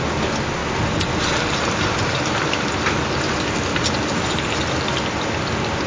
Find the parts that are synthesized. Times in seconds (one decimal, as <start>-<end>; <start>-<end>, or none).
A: none